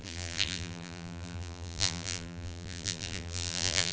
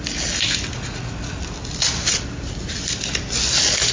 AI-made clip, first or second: first